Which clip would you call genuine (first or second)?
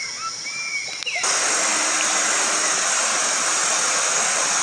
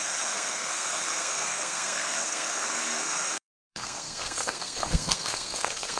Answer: first